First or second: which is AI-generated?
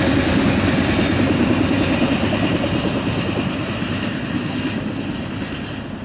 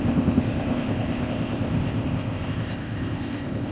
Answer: second